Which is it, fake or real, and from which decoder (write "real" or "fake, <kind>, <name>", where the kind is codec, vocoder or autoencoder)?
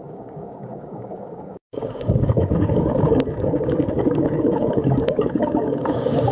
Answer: fake, codec, DAC